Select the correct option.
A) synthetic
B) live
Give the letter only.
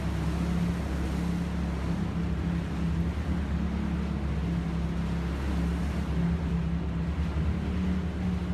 B